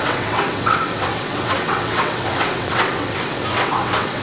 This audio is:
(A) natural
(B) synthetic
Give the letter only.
B